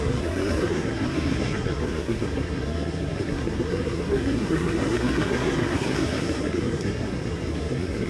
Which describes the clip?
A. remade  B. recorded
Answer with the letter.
A